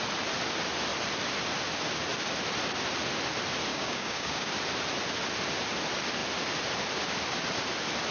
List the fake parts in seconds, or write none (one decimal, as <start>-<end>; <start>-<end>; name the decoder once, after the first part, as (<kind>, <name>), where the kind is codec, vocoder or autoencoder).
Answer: 3.7-4.5 (codec, DAC)